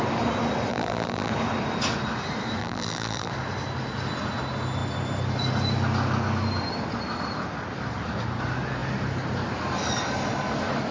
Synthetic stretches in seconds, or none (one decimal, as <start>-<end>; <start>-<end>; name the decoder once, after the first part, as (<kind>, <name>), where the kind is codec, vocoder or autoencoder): 0.7-1.3 (vocoder, BigVGAN v2); 2.6-3.3